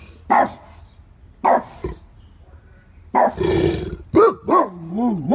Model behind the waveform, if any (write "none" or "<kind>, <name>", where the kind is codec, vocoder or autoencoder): none